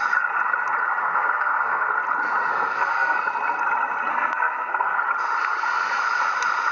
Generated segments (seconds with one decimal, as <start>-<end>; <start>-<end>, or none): 1.0-1.9; 2.5-3.2; 4.1-5.0